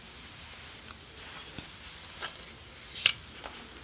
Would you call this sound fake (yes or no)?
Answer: no